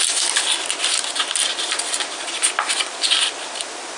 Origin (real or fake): real